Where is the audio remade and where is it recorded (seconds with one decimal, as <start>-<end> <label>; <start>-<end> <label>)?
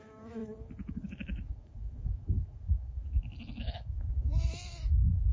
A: 0.0-5.3 remade